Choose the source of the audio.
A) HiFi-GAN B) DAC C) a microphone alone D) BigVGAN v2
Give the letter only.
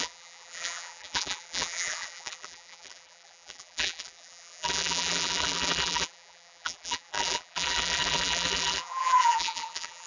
D